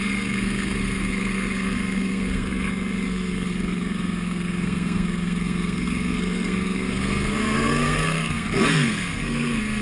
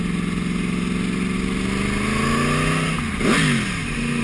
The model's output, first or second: first